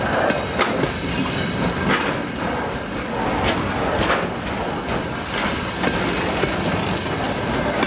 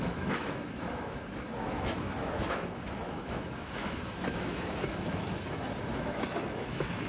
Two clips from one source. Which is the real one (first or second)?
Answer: first